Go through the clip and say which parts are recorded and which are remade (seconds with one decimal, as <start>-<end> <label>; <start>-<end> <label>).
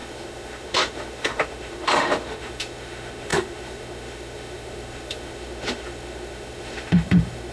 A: 0.0-7.5 remade